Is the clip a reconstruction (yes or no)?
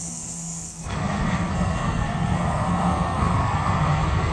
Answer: yes